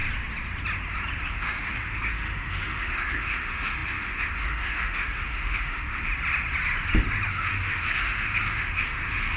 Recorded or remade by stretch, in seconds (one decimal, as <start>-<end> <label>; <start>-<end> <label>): 0.0-1.3 recorded; 1.3-6.1 remade; 6.1-7.3 recorded; 7.3-9.4 remade